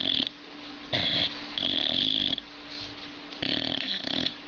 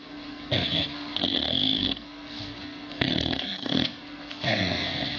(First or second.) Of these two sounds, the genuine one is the first